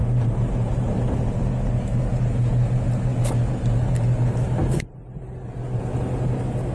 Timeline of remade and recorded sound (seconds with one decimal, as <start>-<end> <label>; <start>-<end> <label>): 0.0-1.4 remade; 1.4-6.7 recorded